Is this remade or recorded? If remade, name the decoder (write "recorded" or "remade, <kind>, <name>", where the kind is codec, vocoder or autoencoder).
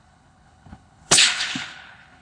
remade, codec, HILCodec